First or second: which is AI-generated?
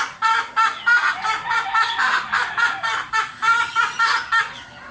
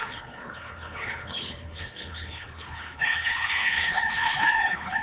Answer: second